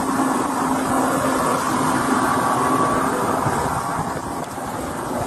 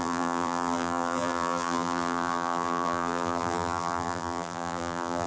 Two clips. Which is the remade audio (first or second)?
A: second